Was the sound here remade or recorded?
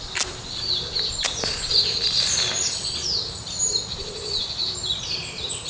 recorded